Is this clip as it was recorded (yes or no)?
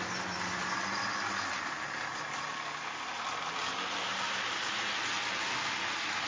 yes